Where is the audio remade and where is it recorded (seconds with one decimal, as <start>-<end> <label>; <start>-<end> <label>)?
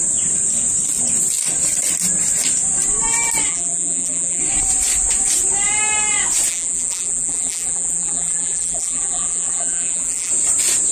0.0-3.5 recorded; 3.5-4.4 remade; 4.4-6.5 recorded; 6.5-10.3 remade; 10.3-10.9 recorded